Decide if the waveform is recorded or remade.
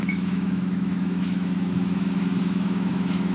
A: remade